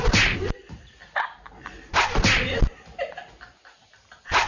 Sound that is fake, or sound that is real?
real